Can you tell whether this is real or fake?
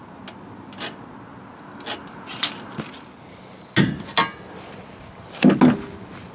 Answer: real